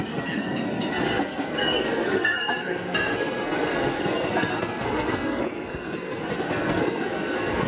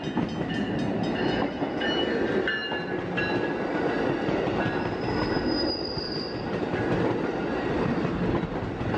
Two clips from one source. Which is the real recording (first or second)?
second